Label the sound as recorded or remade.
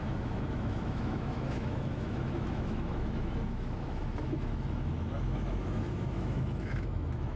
remade